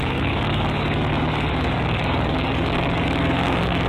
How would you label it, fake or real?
fake